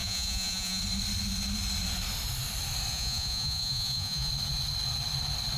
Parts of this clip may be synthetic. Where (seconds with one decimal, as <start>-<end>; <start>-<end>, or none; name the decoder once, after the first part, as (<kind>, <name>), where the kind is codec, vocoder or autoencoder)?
0.0-0.8 (vocoder, Vocos); 2.9-4.3